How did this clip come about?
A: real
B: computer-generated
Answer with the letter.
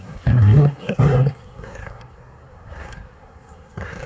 B